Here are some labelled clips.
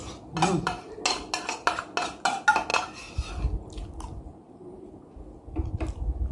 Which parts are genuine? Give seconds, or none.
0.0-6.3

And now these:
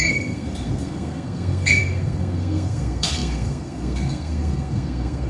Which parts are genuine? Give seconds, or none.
none

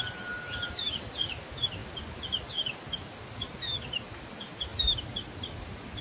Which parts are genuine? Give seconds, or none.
0.0-6.0

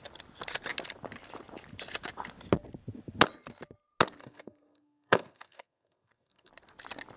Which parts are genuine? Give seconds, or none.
0.0-4.2; 6.5-7.2

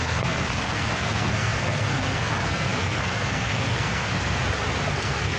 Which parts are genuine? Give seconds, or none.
4.4-4.9

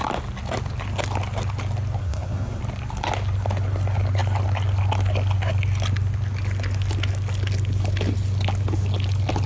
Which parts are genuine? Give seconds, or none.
0.0-2.0; 2.6-9.5

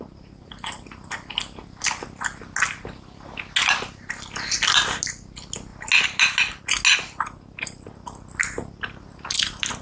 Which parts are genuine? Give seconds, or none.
0.0-9.8